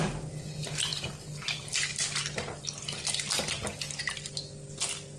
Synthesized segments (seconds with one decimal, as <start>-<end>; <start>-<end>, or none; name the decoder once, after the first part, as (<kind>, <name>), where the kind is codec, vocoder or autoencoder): none